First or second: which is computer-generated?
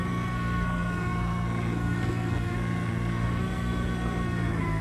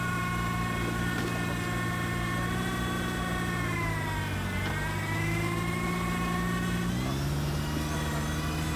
first